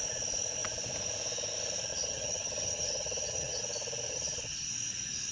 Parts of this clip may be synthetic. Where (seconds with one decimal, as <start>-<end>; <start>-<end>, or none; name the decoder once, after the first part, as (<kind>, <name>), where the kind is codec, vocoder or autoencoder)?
1.9-3.6 (vocoder, HiFi-GAN); 4.1-4.7